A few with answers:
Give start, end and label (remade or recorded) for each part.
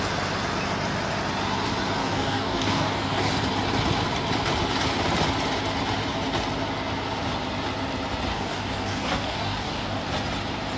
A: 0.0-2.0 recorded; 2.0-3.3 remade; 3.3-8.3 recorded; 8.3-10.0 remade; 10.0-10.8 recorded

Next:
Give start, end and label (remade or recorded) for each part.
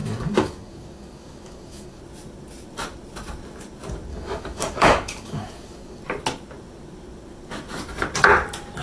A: 0.0-2.0 remade; 2.0-4.1 recorded; 4.1-6.0 remade; 6.0-8.8 recorded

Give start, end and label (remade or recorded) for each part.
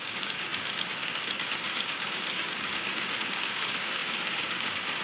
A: 0.0-5.0 remade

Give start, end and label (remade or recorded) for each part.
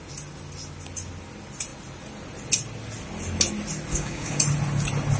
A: 0.0-3.9 recorded; 3.9-4.4 remade; 4.4-5.2 recorded